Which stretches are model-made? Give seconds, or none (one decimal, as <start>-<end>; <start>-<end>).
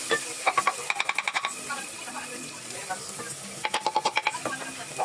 1.8-2.8